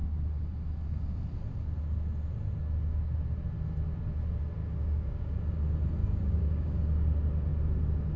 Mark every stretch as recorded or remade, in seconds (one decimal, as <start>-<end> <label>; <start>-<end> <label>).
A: 0.0-4.6 recorded; 4.6-5.3 remade; 5.3-6.0 recorded; 6.0-6.8 remade; 6.8-8.2 recorded